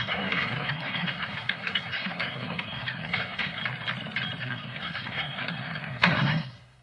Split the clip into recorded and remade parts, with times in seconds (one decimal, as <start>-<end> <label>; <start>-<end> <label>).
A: 0.0-3.6 remade; 3.6-4.4 recorded; 4.4-6.8 remade

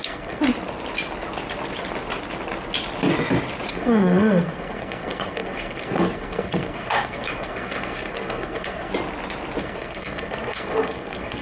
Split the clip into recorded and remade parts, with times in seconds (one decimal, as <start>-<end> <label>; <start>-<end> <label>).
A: 0.0-0.4 remade; 0.4-3.7 recorded; 3.7-8.9 remade; 8.9-9.6 recorded; 9.6-11.4 remade

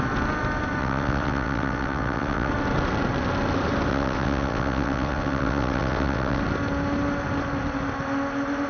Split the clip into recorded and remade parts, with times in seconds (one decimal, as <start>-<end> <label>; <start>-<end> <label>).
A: 0.0-0.8 recorded; 0.8-2.5 remade; 2.5-3.9 recorded; 3.9-6.4 remade; 6.4-8.7 recorded

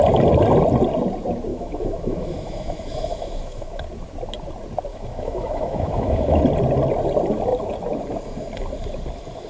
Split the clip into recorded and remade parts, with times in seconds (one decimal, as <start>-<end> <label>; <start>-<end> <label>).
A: 0.0-1.5 recorded; 1.5-3.8 remade; 3.8-4.9 recorded; 4.9-6.4 remade; 6.4-9.5 recorded

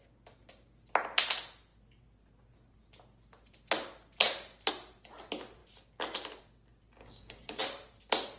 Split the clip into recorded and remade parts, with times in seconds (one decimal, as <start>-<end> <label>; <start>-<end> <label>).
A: 0.0-7.0 recorded; 7.0-7.6 remade; 7.6-8.4 recorded